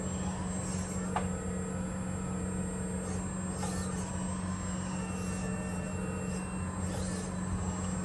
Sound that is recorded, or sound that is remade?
recorded